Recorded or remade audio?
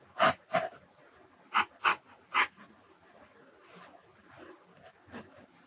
recorded